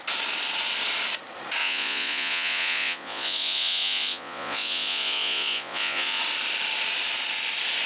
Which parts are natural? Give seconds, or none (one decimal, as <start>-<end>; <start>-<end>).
0.0-1.6; 6.2-7.9